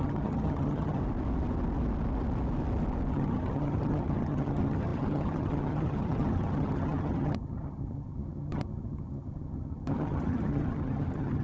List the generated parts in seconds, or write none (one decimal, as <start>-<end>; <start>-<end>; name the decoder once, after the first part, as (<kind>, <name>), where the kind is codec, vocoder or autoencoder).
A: 0.0-1.0 (vocoder, HiFi-GAN); 3.1-11.4